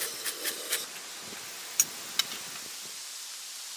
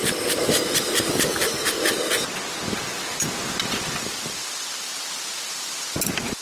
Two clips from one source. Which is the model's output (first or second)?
second